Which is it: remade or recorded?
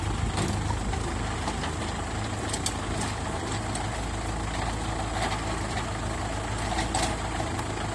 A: recorded